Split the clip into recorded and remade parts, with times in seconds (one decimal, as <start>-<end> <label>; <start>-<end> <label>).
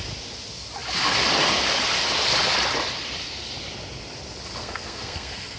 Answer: 0.0-4.6 recorded; 4.6-5.6 remade